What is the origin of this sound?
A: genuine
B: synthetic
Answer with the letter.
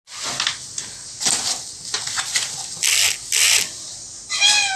A